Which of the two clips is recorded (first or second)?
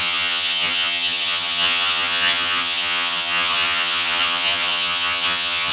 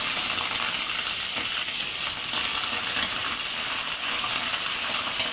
second